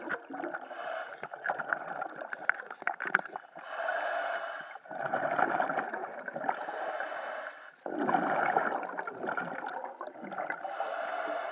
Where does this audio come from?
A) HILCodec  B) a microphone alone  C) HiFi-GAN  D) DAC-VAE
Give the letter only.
B